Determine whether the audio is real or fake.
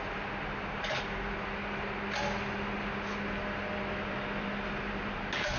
real